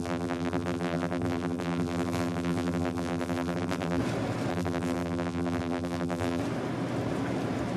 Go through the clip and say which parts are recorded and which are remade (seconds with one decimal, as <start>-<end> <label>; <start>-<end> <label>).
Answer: 0.0-4.0 remade; 4.0-4.5 recorded; 4.5-6.4 remade; 6.4-7.8 recorded